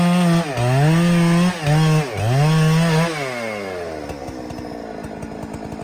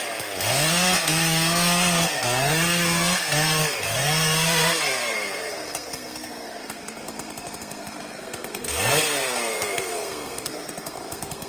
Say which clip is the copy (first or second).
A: second